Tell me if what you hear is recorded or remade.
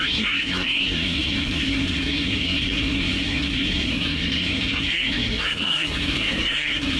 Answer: remade